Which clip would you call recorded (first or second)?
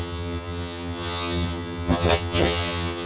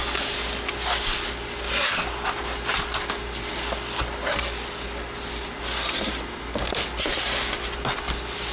second